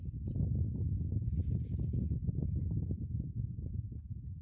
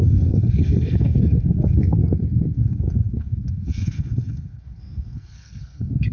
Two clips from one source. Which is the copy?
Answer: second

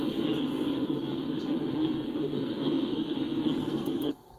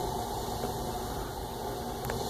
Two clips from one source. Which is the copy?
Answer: first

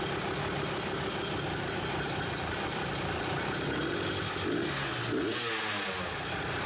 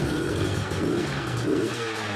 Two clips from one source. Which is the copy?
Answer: second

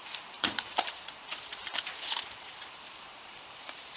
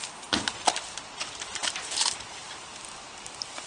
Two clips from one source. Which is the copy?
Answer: first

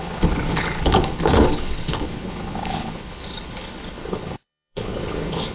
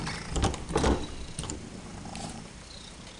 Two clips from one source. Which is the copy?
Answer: first